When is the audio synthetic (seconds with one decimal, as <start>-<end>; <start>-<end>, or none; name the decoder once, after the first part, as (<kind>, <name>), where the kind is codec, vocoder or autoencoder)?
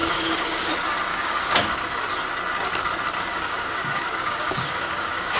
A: 0.0-0.7 (codec, DAC); 1.1-2.0; 3.3-5.4